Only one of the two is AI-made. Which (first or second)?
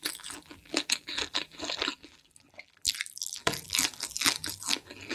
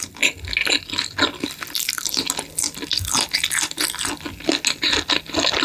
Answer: first